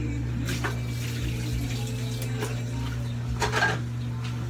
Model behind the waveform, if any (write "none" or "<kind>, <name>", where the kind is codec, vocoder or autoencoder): none